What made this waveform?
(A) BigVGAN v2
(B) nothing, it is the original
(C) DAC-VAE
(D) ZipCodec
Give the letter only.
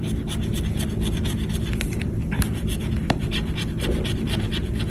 A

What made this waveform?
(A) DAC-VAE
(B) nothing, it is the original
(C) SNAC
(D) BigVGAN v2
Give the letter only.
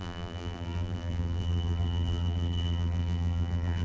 D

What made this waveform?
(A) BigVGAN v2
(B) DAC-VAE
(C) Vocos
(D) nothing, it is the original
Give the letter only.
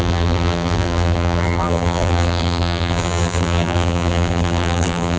A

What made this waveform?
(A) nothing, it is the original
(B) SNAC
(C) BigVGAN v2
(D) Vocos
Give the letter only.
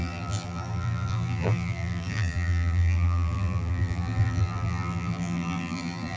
C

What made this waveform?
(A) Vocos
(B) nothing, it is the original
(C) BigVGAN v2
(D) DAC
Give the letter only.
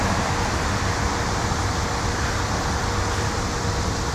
B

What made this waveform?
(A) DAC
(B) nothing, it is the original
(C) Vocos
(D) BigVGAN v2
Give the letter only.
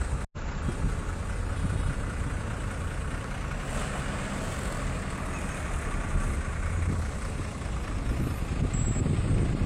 B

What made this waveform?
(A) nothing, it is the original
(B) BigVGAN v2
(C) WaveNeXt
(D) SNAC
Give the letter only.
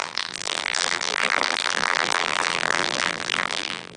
B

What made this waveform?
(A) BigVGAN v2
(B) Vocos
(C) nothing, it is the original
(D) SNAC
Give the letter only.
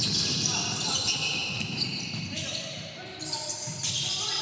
C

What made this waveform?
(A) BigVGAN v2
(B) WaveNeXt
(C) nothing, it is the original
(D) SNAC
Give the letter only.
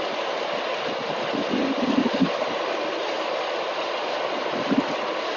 C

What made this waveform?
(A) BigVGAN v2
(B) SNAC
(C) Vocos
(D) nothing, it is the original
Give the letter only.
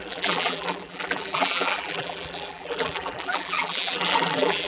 A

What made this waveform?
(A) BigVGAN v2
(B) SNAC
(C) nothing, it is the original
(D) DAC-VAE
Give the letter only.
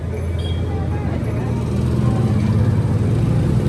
C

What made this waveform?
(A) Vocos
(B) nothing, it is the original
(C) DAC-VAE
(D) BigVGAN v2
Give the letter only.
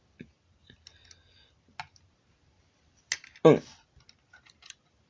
B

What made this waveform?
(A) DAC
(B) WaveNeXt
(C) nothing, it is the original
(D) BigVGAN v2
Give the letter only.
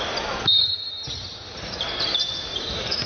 D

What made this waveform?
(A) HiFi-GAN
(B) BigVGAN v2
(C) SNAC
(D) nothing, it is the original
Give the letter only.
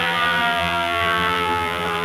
B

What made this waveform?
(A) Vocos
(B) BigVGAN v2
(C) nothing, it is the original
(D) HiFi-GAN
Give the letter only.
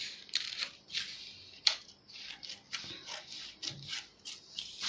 C